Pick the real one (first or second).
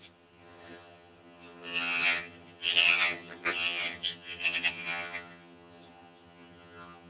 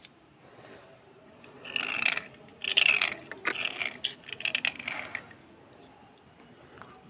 second